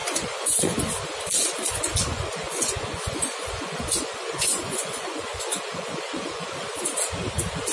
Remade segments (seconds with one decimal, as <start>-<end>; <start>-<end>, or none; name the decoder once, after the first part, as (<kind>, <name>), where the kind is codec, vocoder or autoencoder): 0.0-0.6 (vocoder, Vocos); 2.1-6.7